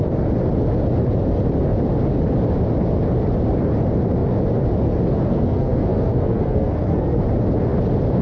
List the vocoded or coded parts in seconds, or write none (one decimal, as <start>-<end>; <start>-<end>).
5.3-7.2